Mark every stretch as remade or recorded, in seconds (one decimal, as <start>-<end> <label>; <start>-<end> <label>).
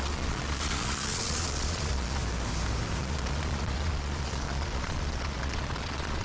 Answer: 0.0-2.2 remade; 2.2-3.0 recorded; 3.0-6.2 remade